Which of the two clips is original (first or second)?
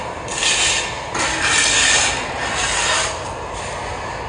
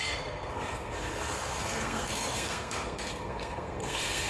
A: first